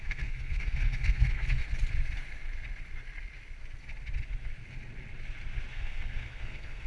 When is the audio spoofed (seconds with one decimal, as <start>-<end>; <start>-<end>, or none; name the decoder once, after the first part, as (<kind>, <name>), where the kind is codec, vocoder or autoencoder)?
0.0-1.6 (codec, SNAC); 5.7-6.9